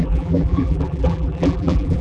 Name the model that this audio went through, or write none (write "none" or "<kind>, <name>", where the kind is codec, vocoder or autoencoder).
vocoder, BigVGAN v2